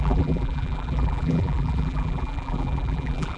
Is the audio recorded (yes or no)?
no